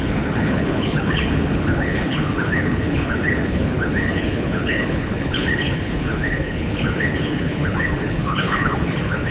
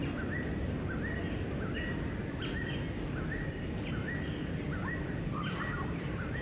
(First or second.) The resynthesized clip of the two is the first